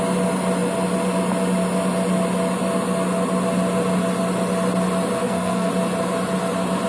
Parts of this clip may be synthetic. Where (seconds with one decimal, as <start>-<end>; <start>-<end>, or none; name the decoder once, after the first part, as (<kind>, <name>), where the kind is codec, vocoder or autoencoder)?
5.2-5.7 (codec, SNAC)